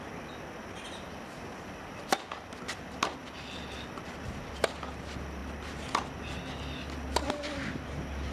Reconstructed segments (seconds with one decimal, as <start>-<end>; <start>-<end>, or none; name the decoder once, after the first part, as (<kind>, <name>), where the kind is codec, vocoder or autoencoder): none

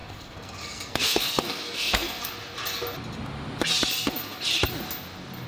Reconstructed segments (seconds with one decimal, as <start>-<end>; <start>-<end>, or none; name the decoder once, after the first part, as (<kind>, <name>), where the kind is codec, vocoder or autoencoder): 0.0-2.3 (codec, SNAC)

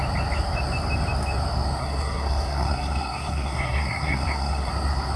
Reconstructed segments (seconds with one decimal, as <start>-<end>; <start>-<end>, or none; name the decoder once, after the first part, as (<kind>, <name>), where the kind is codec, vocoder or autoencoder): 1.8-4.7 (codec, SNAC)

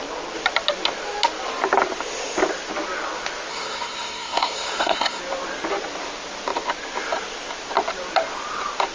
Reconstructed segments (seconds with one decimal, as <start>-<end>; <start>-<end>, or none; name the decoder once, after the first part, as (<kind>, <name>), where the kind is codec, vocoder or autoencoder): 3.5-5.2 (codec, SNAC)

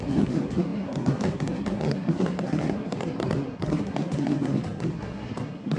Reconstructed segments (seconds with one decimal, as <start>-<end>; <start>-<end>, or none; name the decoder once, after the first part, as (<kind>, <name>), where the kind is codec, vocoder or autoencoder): 0.0-5.8 (codec, SNAC)